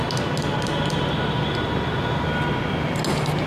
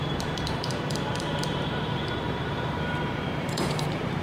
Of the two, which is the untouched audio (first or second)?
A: first